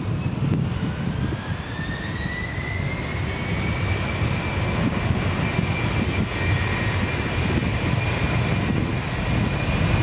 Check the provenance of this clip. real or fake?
real